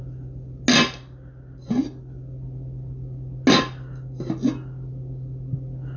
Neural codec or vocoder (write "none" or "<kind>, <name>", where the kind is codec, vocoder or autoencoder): none